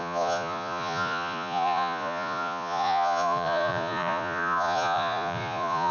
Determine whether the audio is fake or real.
fake